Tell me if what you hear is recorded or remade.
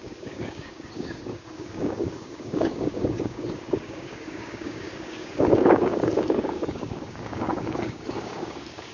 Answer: remade